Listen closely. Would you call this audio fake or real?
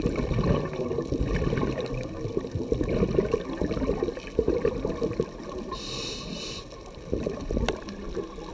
real